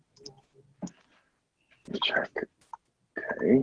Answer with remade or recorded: recorded